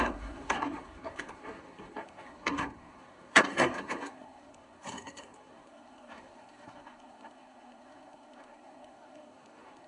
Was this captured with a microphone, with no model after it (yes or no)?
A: no